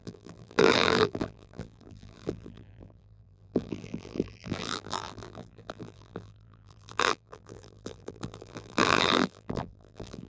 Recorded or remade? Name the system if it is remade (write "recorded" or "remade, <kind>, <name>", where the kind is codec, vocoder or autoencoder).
remade, vocoder, BigVGAN v2